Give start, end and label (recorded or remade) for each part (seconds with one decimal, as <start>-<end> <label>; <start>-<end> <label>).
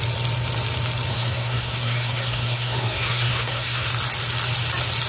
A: 0.0-1.1 recorded; 1.1-3.9 remade; 3.9-5.1 recorded